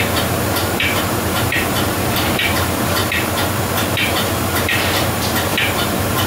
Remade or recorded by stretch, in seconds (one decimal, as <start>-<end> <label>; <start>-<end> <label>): 0.0-3.0 remade; 3.0-3.9 recorded; 3.9-6.3 remade